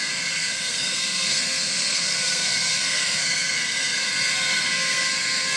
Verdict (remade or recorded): remade